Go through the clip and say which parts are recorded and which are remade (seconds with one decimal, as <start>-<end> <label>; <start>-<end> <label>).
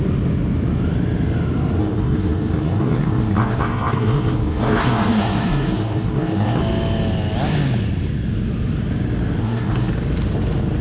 0.0-1.8 recorded; 1.8-6.6 remade; 6.6-9.4 recorded; 9.4-9.9 remade; 9.9-10.8 recorded